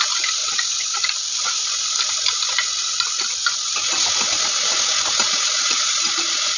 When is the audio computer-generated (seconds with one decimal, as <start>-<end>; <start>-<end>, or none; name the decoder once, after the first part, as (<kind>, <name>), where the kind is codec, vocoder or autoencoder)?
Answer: 0.4-2.1 (vocoder, BigVGAN v2)